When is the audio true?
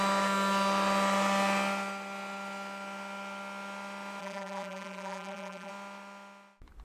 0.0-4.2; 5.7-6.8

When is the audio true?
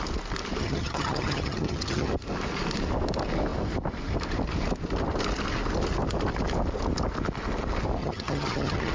0.0-0.6; 2.1-8.0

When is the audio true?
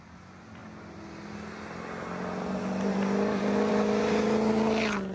0.0-5.1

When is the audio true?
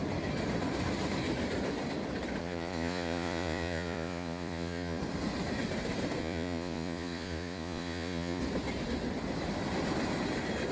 0.0-2.4; 5.0-6.2; 8.4-10.7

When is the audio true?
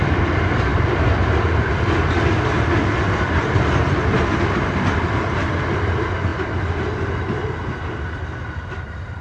0.0-9.2